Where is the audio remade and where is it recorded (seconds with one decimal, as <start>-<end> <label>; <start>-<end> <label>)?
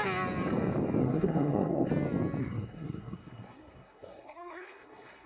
0.0-1.0 recorded; 1.0-1.9 remade; 1.9-2.4 recorded; 2.4-5.3 remade